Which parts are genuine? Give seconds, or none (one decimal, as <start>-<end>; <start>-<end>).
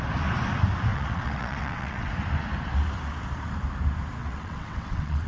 0.0-0.9; 2.1-4.2